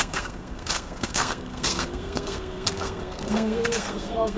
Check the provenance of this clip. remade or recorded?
remade